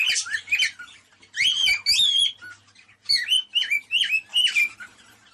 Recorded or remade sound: recorded